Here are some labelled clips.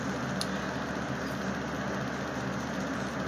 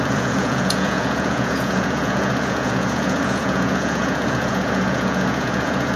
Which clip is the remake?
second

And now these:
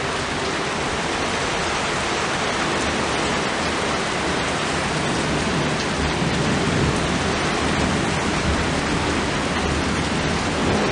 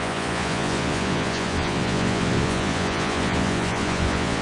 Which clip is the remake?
second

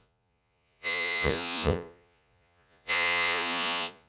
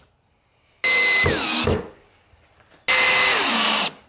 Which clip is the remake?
first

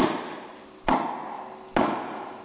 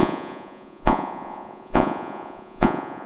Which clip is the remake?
second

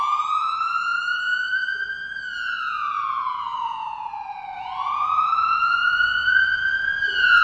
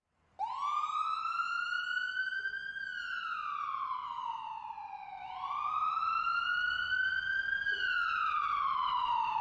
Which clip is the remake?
first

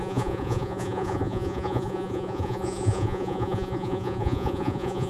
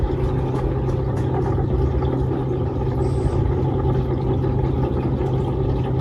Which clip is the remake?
first